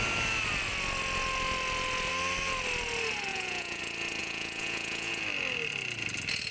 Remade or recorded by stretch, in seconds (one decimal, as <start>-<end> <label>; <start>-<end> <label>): 0.0-3.3 recorded; 3.3-3.8 remade; 3.8-4.2 recorded; 4.2-5.1 remade; 5.1-6.5 recorded